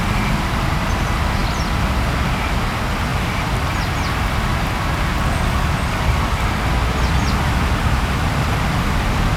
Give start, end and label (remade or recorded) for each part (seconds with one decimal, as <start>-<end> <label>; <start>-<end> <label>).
0.0-9.4 recorded